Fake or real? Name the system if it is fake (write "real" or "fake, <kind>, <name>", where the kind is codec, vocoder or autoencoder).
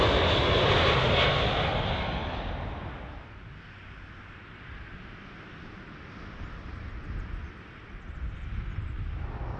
real